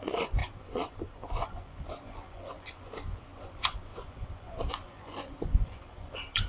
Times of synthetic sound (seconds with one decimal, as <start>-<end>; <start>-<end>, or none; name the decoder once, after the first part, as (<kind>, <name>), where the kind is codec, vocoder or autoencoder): 0.0-6.5 (vocoder, Vocos)